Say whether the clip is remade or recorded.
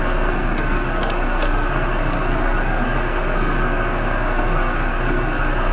remade